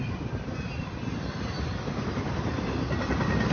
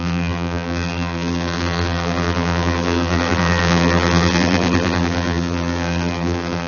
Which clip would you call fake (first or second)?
second